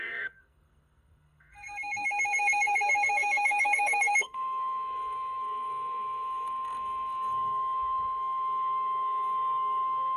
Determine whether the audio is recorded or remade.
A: remade